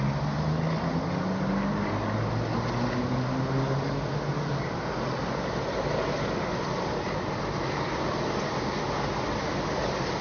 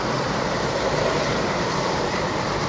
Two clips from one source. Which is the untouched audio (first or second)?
first